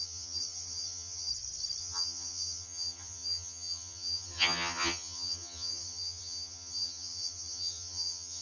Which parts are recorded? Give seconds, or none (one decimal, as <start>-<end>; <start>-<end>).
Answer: 1.3-1.8